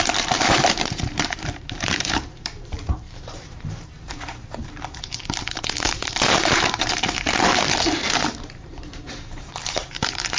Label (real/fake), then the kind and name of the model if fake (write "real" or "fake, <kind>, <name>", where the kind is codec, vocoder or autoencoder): fake, vocoder, BigVGAN v2